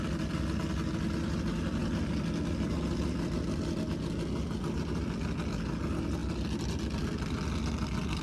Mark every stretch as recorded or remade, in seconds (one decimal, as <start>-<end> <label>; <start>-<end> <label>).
0.0-8.2 recorded